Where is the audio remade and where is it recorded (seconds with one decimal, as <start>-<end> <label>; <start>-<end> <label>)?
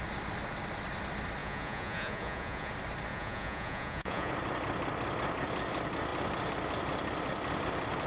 0.0-1.4 recorded; 1.4-2.7 remade; 2.7-3.1 recorded; 3.1-4.3 remade; 4.3-8.1 recorded